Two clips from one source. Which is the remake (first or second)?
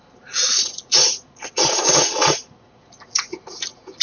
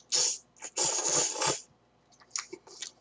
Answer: first